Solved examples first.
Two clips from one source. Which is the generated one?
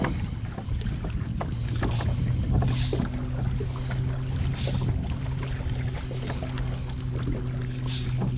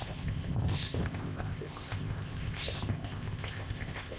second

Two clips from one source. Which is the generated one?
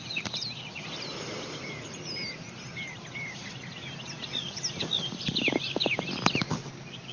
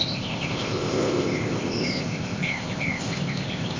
second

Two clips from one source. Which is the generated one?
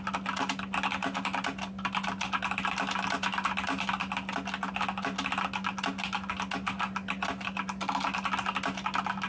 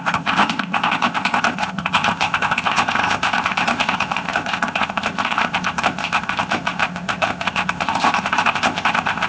second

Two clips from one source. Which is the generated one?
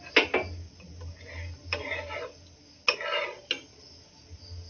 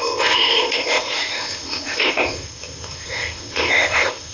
second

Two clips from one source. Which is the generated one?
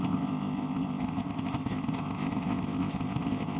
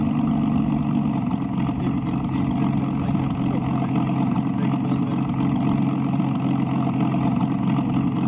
first